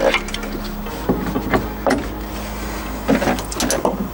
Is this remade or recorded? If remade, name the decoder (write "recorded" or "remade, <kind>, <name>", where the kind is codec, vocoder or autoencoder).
recorded